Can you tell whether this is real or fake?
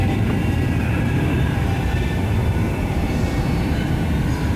fake